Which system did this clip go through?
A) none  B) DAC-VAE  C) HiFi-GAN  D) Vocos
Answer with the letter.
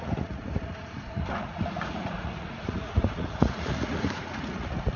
D